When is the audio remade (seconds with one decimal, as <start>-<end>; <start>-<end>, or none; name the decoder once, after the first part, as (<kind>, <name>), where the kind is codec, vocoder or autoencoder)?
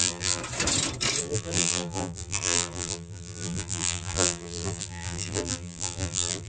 0.0-0.4 (vocoder, BigVGAN v2); 1.2-6.5